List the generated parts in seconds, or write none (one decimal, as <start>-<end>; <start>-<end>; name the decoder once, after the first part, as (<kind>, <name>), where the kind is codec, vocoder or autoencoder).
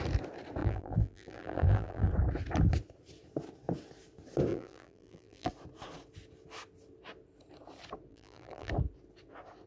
0.6-2.1 (vocoder, BigVGAN v2); 4.5-5.5; 8.1-8.7